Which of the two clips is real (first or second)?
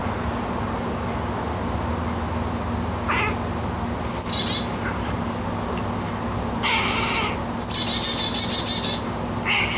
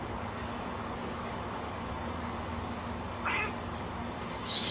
first